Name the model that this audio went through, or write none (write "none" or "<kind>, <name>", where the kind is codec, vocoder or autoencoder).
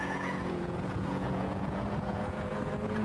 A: vocoder, Vocos